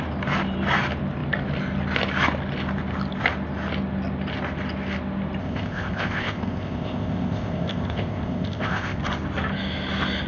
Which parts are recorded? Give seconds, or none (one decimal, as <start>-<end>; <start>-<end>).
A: 0.0-5.4; 9.0-10.3